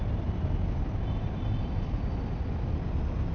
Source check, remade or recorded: recorded